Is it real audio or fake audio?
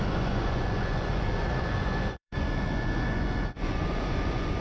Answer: fake